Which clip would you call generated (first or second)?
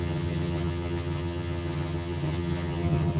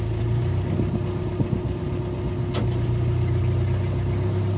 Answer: first